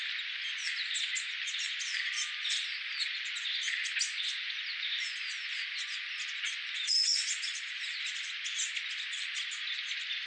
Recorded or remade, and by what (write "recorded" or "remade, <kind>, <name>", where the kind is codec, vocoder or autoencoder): recorded